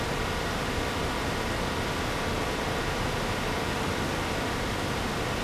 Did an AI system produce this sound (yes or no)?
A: no